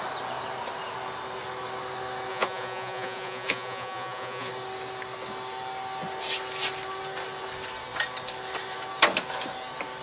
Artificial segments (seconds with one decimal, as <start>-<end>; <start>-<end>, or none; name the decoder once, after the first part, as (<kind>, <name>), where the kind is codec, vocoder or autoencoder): 2.3-4.5 (vocoder, Vocos)